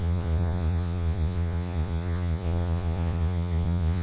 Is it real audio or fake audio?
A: fake